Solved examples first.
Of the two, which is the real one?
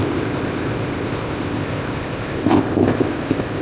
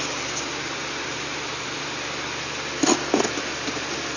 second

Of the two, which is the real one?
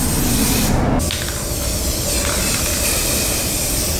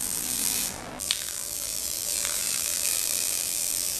first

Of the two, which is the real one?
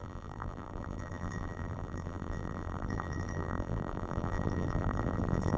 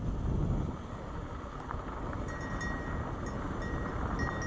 second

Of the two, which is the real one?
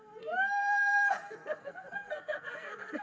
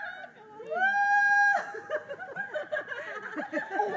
second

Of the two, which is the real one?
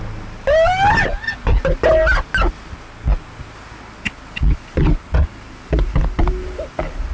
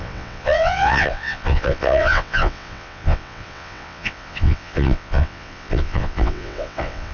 first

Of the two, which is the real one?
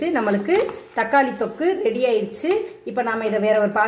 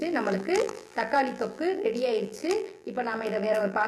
first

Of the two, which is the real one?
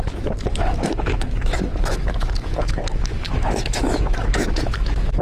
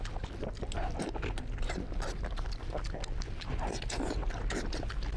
second